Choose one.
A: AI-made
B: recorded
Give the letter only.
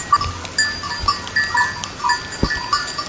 B